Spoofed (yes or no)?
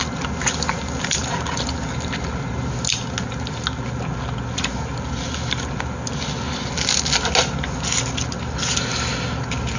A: no